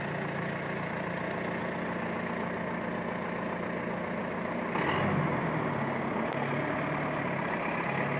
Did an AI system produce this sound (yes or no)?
no